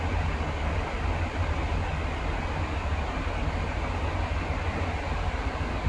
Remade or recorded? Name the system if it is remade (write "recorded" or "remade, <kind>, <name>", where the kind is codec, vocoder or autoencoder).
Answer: recorded